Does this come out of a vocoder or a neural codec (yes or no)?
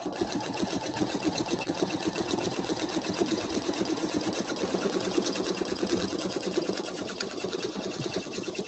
yes